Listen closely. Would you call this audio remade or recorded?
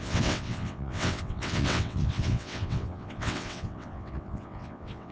remade